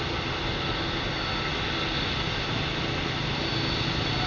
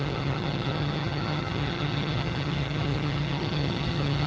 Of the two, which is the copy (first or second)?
second